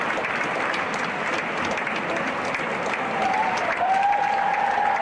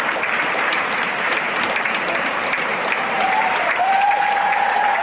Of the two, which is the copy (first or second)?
second